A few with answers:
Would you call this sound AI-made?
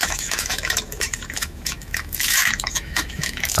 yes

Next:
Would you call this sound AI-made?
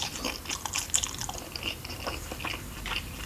no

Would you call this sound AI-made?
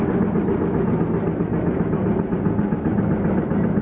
no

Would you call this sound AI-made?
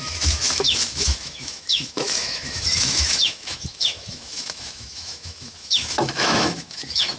yes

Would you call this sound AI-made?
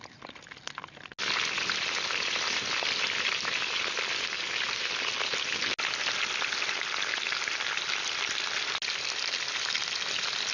no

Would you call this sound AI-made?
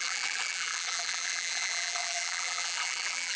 yes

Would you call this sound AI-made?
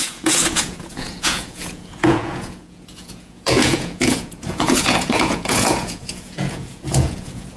yes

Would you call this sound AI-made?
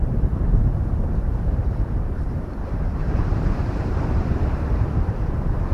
yes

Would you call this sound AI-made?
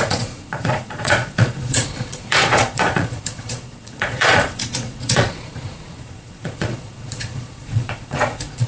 yes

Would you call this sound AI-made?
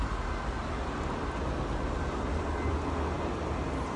no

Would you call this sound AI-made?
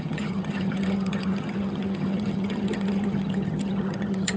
yes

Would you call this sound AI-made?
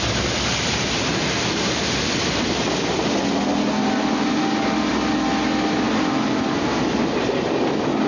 no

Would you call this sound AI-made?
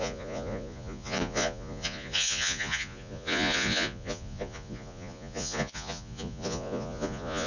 yes